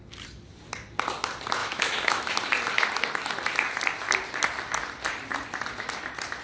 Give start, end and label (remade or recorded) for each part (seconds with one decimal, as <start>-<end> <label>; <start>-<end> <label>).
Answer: 0.0-1.6 recorded; 1.6-2.3 remade; 2.3-6.4 recorded